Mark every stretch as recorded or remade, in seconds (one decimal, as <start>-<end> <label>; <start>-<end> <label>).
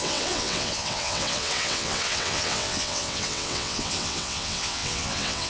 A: 0.0-5.5 remade